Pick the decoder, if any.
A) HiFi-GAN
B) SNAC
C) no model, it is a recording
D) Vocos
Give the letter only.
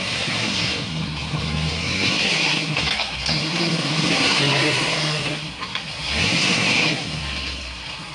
B